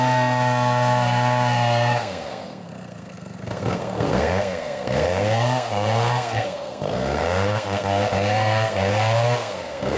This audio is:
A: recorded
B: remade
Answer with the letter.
B